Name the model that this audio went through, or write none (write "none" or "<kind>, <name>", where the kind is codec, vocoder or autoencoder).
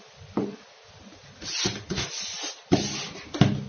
none